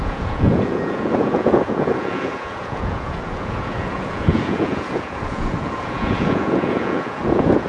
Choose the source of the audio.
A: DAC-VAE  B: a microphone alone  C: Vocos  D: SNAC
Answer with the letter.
C